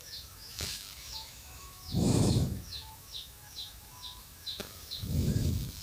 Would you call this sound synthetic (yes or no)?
yes